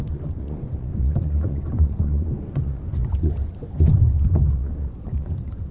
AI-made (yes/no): yes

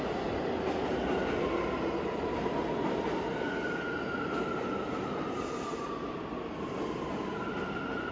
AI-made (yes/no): no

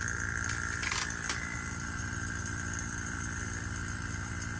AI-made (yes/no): yes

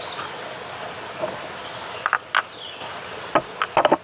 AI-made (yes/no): no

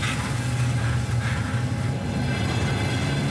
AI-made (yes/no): no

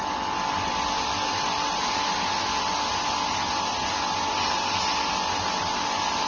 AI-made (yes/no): no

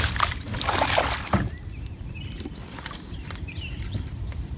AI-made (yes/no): yes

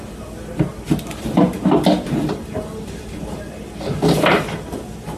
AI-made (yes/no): yes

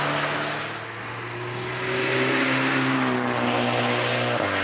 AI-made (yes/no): no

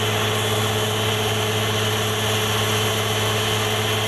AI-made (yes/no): no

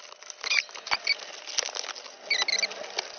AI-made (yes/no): no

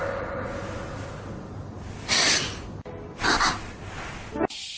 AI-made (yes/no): no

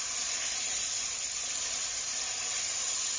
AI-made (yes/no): yes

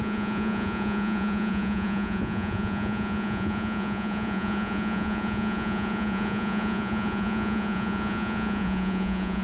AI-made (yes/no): yes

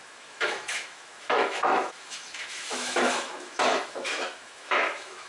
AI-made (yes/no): yes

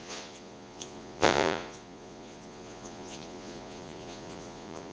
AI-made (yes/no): yes